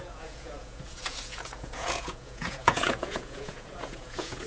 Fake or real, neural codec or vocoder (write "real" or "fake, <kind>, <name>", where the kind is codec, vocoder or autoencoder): fake, vocoder, Vocos